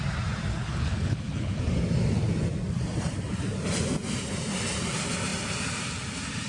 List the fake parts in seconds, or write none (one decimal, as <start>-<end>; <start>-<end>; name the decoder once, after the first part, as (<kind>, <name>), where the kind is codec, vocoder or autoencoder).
0.5-1.6 (codec, HILCodec)

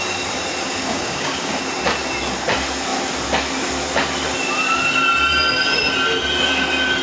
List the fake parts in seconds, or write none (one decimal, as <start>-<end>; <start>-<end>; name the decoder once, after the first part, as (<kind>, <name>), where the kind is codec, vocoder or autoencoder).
0.6-1.6 (codec, DAC)

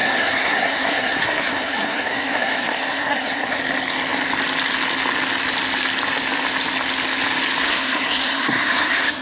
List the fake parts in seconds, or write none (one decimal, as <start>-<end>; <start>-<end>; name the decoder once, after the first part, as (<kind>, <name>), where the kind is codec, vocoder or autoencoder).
0.0-3.6 (codec, SNAC); 7.6-9.2

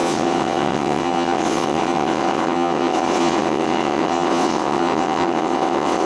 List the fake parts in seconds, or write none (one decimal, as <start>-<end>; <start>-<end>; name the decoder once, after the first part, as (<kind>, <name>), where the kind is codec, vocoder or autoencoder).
0.0-6.1 (vocoder, WaveNeXt)